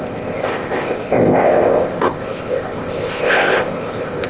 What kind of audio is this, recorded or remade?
remade